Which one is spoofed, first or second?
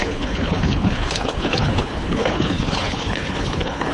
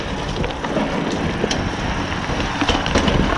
first